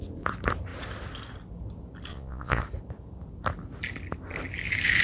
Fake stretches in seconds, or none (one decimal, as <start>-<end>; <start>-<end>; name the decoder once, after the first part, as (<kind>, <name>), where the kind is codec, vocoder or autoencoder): 2.1-2.6 (vocoder, Vocos)